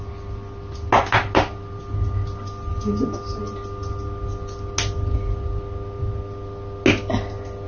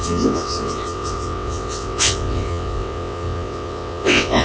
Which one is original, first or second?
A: first